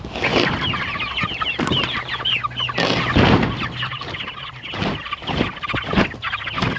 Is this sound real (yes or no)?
yes